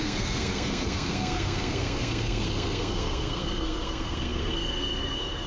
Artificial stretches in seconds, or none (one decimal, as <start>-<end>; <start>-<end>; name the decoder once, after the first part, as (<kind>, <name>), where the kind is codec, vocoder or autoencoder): 0.0-5.5 (codec, SNAC)